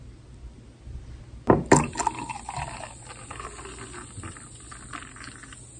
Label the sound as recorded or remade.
recorded